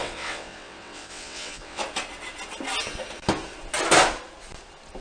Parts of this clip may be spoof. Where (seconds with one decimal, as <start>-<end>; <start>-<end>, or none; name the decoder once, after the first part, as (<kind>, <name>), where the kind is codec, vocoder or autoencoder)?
0.0-1.8 (vocoder, WaveNeXt)